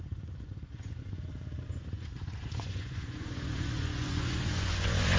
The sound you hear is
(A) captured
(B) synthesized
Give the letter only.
B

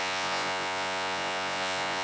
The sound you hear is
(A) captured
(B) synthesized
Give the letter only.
B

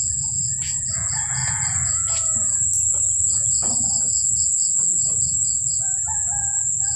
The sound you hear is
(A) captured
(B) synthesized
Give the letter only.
B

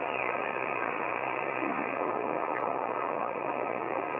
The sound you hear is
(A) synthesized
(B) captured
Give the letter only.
A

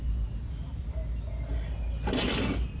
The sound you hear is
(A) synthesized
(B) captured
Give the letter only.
B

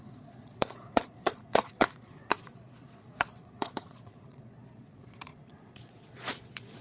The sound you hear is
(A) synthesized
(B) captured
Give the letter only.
A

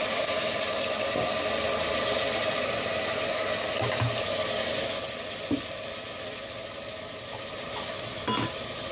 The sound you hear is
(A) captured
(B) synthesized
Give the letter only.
A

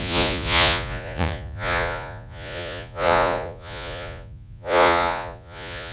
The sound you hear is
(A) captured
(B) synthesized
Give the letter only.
B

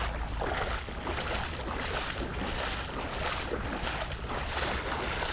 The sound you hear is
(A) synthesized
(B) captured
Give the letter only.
B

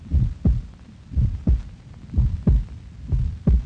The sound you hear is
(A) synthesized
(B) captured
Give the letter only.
B